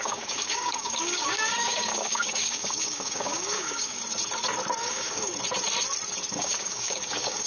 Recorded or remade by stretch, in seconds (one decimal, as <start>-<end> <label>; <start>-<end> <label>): 0.0-4.0 remade; 4.0-4.8 recorded; 4.8-5.3 remade; 5.3-6.3 recorded; 6.3-7.5 remade